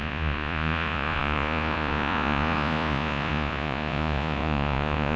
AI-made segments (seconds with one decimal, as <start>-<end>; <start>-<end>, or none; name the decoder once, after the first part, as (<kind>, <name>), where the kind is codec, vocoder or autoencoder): 0.0-5.2 (vocoder, Vocos)